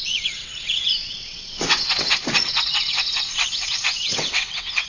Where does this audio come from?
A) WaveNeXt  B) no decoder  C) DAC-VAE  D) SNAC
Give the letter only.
A